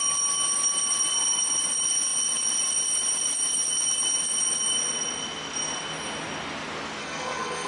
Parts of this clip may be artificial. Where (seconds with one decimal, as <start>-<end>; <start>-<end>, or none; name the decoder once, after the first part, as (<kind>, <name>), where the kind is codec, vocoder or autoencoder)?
7.0-7.7 (codec, SNAC)